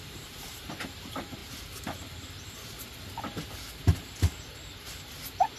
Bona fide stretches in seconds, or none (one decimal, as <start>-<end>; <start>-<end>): 1.4-3.7